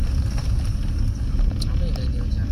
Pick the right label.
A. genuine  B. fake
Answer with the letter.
A